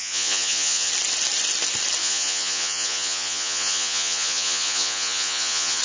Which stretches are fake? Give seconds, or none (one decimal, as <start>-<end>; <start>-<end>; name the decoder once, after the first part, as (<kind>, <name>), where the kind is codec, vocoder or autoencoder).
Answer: 0.0-0.9 (vocoder, Vocos); 2.0-5.8